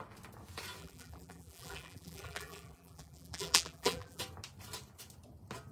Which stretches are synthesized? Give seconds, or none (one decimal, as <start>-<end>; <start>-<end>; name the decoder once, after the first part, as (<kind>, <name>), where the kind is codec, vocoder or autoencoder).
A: 0.8-4.2 (vocoder, BigVGAN v2)